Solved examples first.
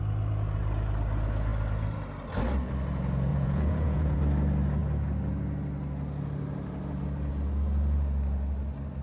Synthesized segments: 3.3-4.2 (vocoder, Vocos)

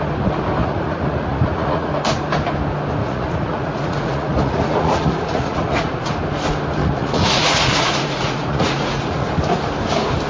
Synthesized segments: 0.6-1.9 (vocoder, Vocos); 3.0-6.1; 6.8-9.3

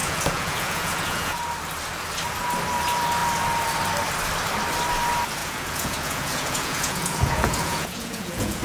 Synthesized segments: 0.0-1.4 (vocoder, Vocos); 5.4-8.6

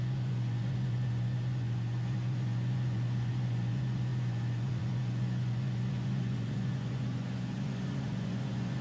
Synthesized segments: 0.0-8.8 (vocoder, Vocos)

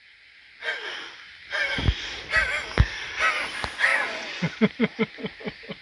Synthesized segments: 3.9-5.0 (vocoder, Vocos)